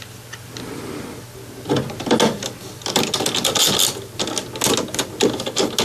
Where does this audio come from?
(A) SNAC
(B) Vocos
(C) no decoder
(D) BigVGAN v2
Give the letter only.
C